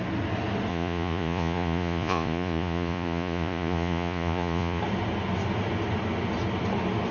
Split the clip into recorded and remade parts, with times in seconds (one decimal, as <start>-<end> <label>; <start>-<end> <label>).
0.0-0.7 recorded; 0.7-4.8 remade; 4.8-7.1 recorded